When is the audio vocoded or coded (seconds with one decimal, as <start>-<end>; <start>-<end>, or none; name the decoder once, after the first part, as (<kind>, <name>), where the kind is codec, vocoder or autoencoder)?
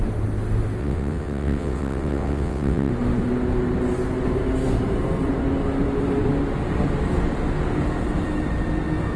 0.8-2.9 (vocoder, WaveNeXt)